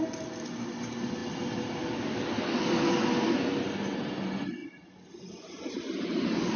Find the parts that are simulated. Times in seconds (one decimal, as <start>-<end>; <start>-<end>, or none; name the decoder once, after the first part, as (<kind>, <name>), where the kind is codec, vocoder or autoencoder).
none